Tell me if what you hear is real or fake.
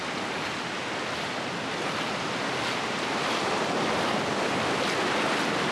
real